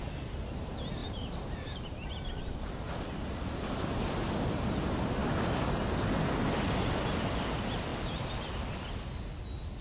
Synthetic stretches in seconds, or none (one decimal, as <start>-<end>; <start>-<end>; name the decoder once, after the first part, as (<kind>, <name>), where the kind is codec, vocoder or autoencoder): 1.0-2.5 (vocoder, BigVGAN v2)